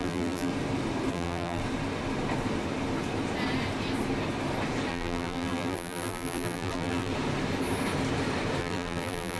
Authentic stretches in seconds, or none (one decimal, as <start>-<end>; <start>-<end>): 0.5-1.1; 1.6-4.9; 7.1-8.6